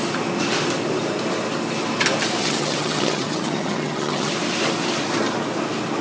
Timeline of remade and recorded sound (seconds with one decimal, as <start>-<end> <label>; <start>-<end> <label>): 0.0-2.4 recorded; 2.4-4.3 remade; 4.3-6.0 recorded